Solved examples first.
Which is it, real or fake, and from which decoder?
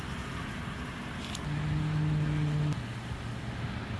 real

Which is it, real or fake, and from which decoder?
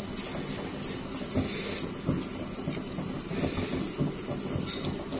real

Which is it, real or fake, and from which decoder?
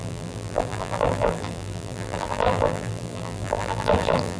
fake, vocoder, BigVGAN v2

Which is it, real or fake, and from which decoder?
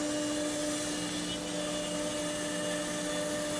real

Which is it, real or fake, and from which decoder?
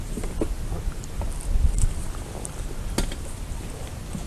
real